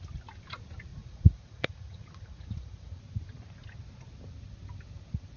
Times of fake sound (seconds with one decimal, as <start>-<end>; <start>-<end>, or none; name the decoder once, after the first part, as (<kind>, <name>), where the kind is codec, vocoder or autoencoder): 0.9-3.0 (vocoder, Vocos)